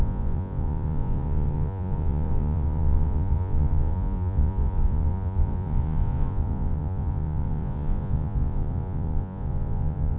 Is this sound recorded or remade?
remade